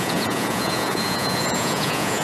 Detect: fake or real fake